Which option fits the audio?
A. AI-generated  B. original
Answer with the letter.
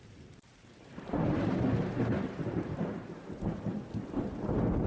A